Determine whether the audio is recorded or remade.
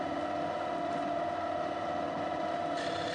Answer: remade